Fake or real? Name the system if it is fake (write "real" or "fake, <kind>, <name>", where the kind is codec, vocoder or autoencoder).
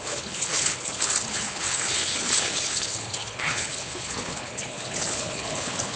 fake, codec, HILCodec